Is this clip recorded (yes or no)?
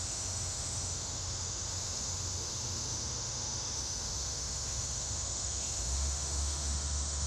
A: no